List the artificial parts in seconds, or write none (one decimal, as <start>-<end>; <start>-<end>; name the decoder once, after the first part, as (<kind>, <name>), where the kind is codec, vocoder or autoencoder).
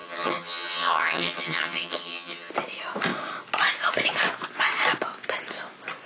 0.0-2.5 (vocoder, HiFi-GAN)